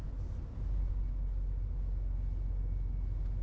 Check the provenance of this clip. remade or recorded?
recorded